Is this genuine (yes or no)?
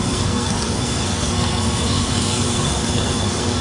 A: no